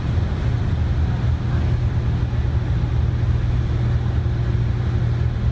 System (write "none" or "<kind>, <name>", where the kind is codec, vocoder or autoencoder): none